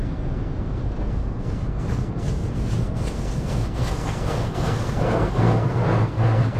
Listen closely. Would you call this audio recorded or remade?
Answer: remade